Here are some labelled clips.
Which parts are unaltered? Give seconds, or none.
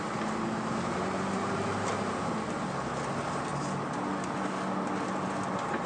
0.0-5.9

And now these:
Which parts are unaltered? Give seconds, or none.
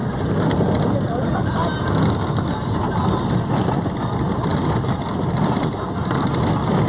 0.0-6.9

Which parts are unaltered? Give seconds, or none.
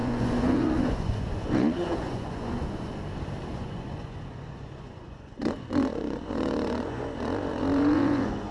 2.9-3.5